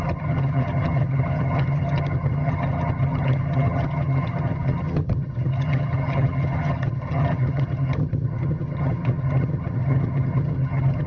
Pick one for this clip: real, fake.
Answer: fake